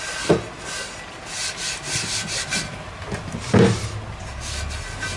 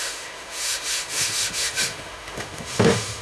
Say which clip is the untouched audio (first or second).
first